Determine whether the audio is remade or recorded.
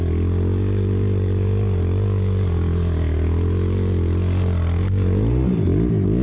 recorded